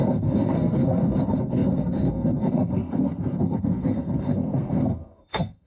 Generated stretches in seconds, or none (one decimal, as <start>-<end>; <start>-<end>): 0.0-5.7